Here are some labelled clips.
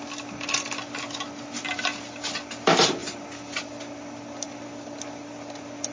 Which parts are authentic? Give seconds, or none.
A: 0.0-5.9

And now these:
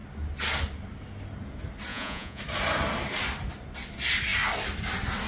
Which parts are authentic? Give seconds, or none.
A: 0.0-1.9; 2.4-5.3

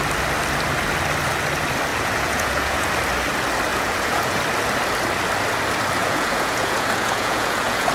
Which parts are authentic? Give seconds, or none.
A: 0.0-1.9; 2.9-3.7; 4.4-6.0